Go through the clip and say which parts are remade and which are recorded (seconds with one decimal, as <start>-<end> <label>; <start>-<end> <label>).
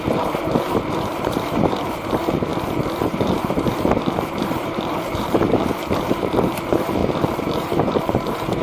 0.0-2.5 remade; 2.5-3.0 recorded; 3.0-8.6 remade